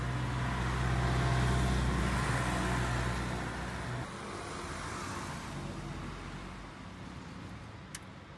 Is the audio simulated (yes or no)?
no